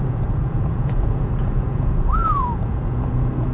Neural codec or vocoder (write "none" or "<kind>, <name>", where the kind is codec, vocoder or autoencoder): vocoder, Vocos